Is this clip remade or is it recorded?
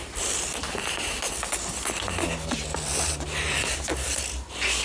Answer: recorded